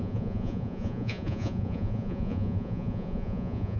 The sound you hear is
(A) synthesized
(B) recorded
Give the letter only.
A